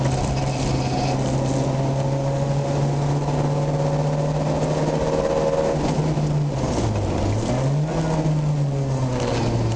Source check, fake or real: real